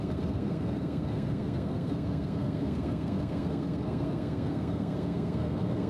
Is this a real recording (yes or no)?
no